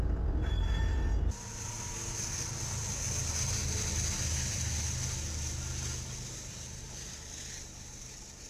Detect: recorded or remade recorded